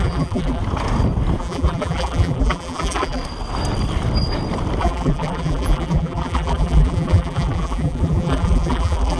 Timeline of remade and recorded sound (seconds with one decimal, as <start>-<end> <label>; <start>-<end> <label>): 0.0-0.6 remade; 0.6-1.4 recorded; 1.4-3.2 remade; 3.2-4.8 recorded; 4.8-9.2 remade